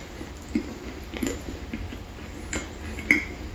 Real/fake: real